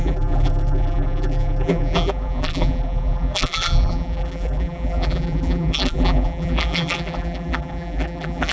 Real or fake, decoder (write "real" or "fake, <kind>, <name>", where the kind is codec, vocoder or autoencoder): fake, vocoder, BigVGAN v2